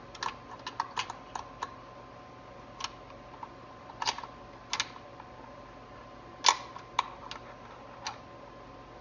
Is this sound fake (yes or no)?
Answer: no